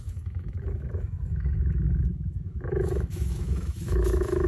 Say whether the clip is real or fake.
fake